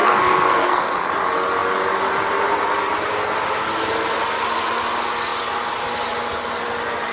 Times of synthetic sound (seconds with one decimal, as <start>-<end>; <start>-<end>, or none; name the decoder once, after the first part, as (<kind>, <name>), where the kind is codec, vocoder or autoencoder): 0.0-1.1 (codec, SNAC)